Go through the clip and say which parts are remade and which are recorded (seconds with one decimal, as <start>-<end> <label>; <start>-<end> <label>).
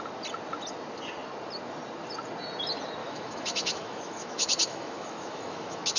0.0-3.0 recorded; 3.0-6.0 remade